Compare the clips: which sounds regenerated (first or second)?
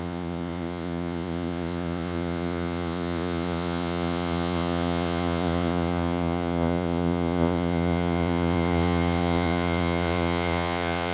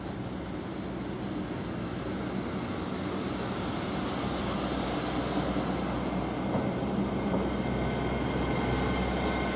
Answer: first